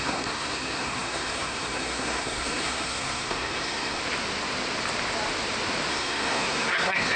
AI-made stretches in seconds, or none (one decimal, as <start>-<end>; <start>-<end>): 0.0-4.0; 5.9-7.2